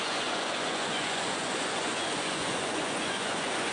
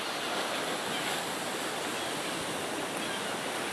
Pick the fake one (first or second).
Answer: first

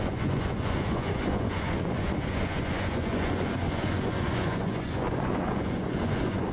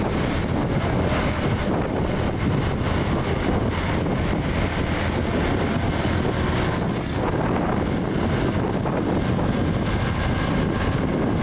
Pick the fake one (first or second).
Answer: first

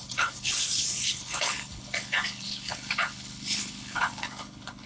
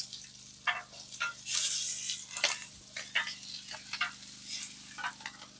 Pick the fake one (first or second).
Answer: first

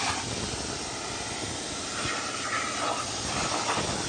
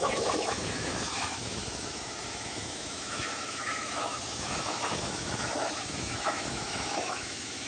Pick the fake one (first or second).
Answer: second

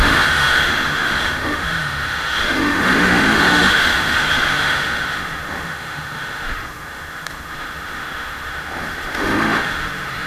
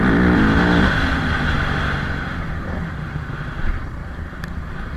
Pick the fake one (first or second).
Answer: first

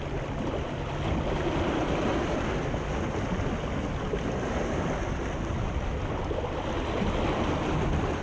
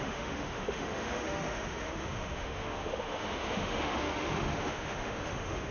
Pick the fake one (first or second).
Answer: second